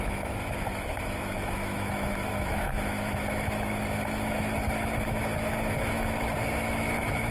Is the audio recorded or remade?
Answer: remade